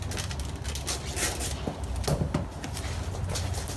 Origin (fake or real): real